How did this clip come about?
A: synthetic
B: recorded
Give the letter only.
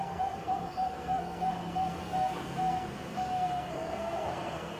A